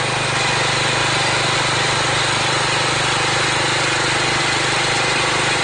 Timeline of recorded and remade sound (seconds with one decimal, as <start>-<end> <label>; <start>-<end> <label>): 0.0-5.6 recorded